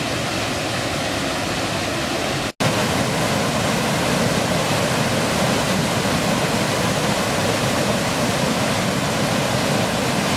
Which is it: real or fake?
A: real